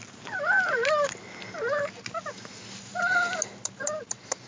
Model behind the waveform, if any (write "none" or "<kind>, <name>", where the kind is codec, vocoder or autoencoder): none